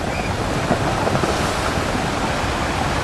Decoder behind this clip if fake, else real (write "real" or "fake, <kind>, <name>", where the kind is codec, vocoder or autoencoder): real